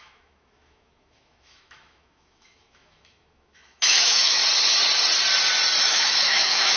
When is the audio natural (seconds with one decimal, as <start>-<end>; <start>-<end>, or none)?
4.4-5.8